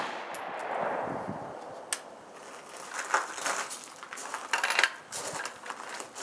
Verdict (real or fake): real